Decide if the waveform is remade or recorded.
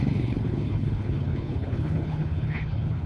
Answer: remade